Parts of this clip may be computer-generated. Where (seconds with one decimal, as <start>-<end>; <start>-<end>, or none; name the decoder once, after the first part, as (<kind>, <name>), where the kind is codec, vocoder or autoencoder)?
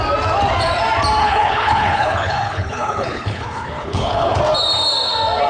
1.2-4.4 (codec, HILCodec)